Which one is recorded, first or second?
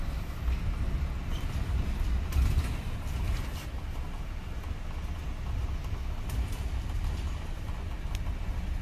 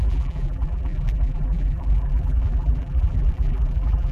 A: first